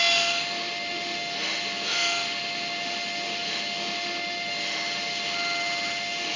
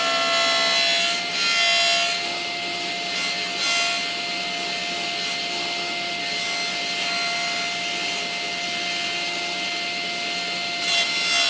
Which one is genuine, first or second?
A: second